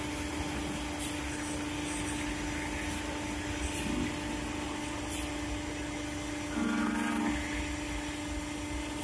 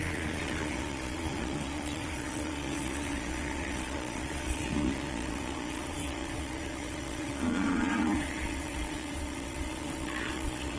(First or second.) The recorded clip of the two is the first